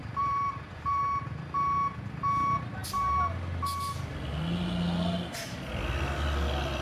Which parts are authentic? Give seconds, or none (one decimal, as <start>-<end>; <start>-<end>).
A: 1.0-6.8